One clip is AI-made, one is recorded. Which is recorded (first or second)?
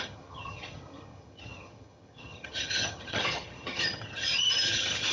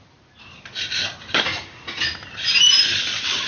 second